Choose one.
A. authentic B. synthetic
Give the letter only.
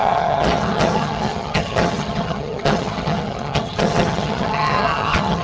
B